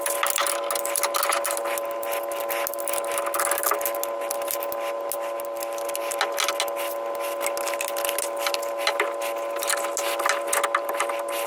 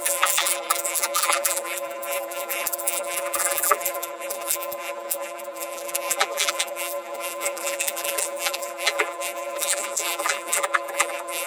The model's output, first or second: second